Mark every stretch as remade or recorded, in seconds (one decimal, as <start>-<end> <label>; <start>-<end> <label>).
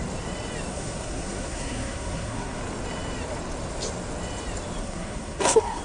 0.0-0.7 recorded; 0.7-2.6 remade; 2.6-4.8 recorded; 4.8-5.8 remade